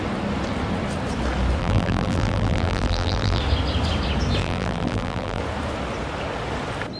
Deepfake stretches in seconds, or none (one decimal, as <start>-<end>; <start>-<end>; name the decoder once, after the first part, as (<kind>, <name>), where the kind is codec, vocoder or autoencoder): 1.6-3.4 (vocoder, BigVGAN v2); 4.4-5.4